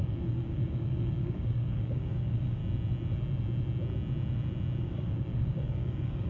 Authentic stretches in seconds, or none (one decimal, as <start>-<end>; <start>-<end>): 2.6-4.8